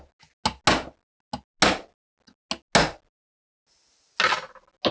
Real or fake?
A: real